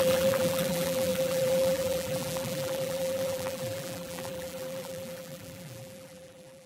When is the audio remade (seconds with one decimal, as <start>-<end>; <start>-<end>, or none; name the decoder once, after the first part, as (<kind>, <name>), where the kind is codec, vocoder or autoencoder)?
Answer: 0.0-6.7 (vocoder, BigVGAN v2)

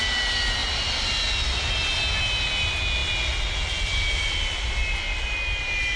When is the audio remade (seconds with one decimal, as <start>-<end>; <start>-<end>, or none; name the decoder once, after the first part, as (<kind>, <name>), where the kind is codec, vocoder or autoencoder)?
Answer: none